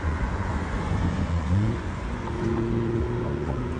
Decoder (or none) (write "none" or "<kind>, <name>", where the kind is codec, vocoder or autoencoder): vocoder, Vocos